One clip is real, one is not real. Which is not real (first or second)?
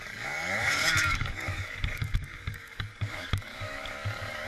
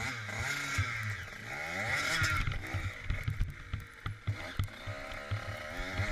first